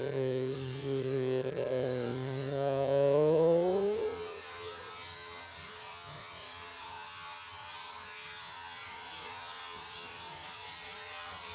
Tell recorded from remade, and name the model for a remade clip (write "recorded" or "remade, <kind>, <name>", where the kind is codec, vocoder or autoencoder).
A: remade, vocoder, HiFi-GAN